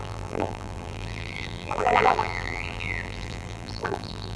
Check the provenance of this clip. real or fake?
fake